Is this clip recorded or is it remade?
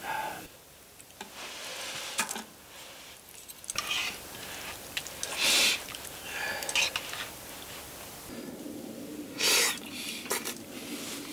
recorded